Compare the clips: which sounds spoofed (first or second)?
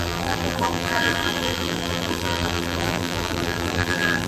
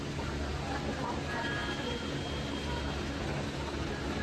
first